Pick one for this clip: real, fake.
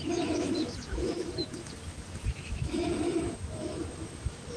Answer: fake